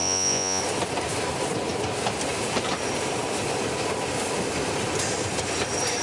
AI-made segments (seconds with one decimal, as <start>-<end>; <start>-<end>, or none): 0.0-0.6